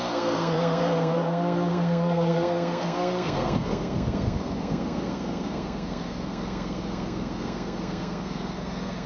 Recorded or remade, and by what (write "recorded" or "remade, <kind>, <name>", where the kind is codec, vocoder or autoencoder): remade, codec, SNAC